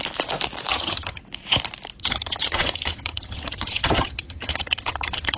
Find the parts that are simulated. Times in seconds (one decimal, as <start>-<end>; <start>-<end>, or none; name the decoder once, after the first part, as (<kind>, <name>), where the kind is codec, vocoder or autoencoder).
0.7-1.2 (vocoder, HiFi-GAN); 2.0-5.4

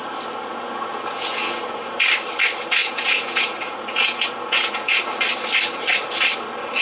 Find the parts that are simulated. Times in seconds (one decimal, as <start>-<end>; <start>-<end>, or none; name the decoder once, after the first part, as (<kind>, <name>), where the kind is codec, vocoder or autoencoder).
0.5-2.0 (vocoder, Vocos); 2.8-5.0